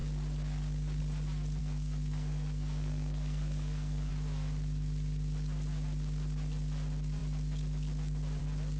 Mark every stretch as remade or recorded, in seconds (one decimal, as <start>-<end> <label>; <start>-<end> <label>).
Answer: 0.0-1.6 recorded; 1.6-4.1 remade; 4.1-8.8 recorded